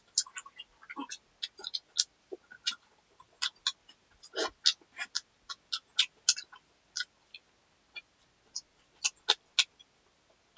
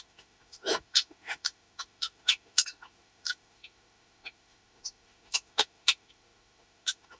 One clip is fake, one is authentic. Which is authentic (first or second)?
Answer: first